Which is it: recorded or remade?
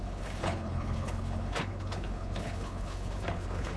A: remade